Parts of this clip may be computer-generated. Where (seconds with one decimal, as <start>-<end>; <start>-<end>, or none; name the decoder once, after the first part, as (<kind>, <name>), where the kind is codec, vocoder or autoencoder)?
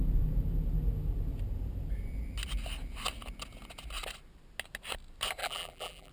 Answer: 5.4-6.1 (vocoder, BigVGAN v2)